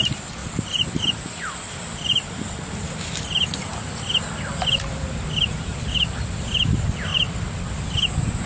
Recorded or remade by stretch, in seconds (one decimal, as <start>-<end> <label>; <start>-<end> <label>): 0.0-0.4 recorded; 0.4-3.9 remade; 3.9-7.1 recorded; 7.1-7.8 remade; 7.8-8.5 recorded